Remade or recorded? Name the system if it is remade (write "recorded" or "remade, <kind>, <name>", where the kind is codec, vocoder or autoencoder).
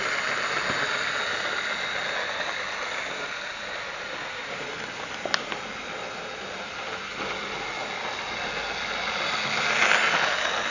recorded